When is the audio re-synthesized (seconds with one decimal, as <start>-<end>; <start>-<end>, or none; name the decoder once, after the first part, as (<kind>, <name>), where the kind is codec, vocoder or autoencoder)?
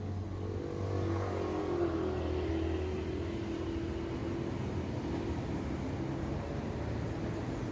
none